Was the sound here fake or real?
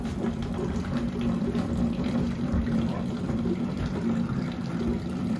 fake